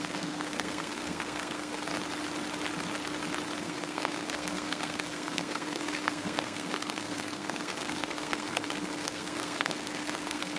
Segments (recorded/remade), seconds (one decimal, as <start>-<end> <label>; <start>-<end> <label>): 0.0-1.9 remade; 1.9-3.6 recorded; 3.6-10.6 remade